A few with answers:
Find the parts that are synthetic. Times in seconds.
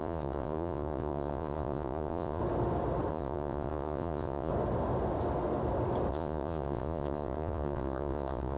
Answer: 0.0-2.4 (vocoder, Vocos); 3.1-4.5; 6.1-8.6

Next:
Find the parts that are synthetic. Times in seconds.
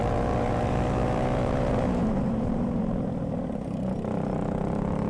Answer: 0.0-3.1 (vocoder, BigVGAN v2)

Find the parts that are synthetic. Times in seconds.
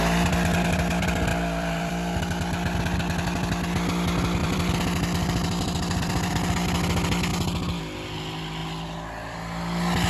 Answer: 1.3-1.9 (vocoder, BigVGAN v2); 4.4-6.3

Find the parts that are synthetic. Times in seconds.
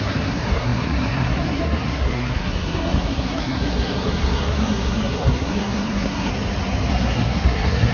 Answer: 0.0-6.3 (codec, SNAC); 6.9-7.9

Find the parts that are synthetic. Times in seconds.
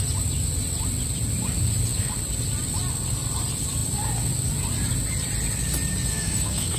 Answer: 6.1-6.8 (codec, SNAC)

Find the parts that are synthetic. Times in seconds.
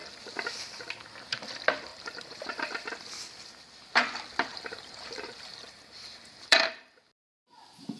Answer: 1.9-2.9 (vocoder, BigVGAN v2); 4.5-7.0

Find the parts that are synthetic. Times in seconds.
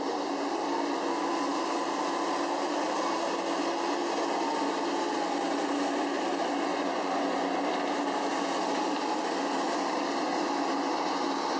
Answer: 6.7-7.6 (vocoder, Vocos)